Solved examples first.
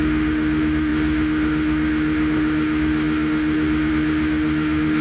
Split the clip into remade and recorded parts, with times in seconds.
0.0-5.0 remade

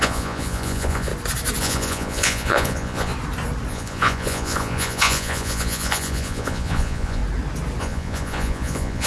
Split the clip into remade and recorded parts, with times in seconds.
0.0-1.1 remade; 1.1-1.6 recorded; 1.6-3.1 remade; 3.1-3.7 recorded; 3.7-7.2 remade; 7.2-7.8 recorded; 7.8-9.1 remade

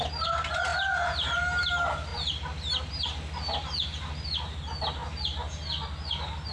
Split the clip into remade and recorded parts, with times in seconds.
0.0-6.5 recorded